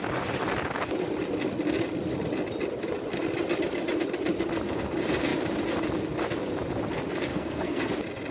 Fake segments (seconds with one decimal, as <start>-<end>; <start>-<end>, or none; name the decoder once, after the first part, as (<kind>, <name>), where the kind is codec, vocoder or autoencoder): 7.3-7.9 (codec, SNAC)

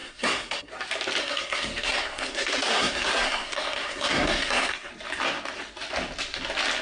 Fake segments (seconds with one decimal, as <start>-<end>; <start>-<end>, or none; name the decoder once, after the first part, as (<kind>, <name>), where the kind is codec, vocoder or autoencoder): 0.0-0.7 (codec, SNAC); 1.2-4.9

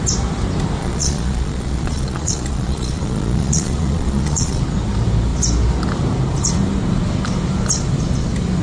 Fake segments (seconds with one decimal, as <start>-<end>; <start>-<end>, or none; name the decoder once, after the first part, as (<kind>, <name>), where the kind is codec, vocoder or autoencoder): 0.8-4.6 (vocoder, Vocos)

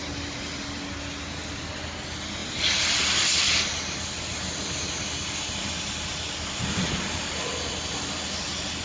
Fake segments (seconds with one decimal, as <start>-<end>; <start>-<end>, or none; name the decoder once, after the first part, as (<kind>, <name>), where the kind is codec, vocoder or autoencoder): none

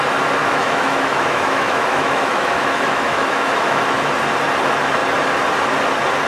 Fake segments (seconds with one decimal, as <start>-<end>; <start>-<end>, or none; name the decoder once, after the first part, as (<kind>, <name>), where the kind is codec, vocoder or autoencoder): 0.4-4.1 (autoencoder, DAC-VAE)

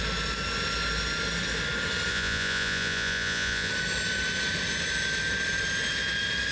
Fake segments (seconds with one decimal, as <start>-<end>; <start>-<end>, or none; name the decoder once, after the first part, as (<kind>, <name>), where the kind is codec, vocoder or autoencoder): 2.1-3.7 (vocoder, Vocos)